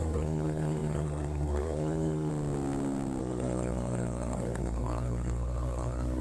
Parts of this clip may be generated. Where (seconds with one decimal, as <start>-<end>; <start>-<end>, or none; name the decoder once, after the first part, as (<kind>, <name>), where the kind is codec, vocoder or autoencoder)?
0.0-2.3 (codec, SNAC); 3.2-6.2